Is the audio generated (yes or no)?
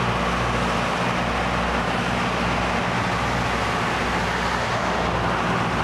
no